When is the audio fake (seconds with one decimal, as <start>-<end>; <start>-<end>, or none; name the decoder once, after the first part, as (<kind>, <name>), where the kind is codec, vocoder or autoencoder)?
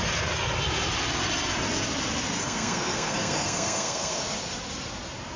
2.4-4.2 (codec, SNAC)